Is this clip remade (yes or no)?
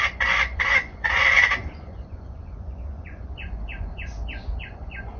yes